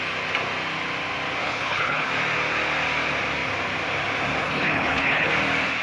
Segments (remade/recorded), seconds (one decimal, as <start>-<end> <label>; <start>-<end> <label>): 0.0-1.4 recorded; 1.4-2.1 remade; 2.1-4.4 recorded; 4.4-5.3 remade; 5.3-5.8 recorded